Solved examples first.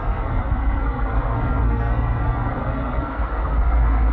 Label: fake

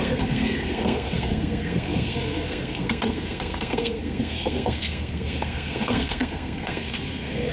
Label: fake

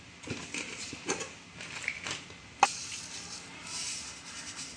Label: real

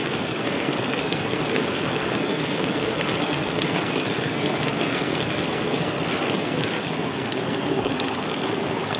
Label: fake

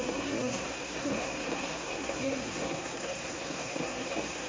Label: fake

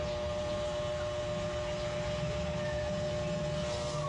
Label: real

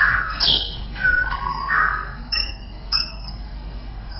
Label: fake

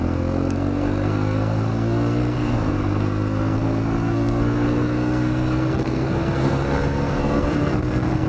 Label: fake